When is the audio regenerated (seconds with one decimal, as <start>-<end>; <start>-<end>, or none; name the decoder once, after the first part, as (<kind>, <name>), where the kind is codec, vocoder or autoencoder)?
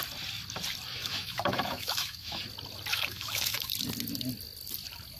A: 1.0-2.4 (autoencoder, DAC-VAE); 2.9-3.7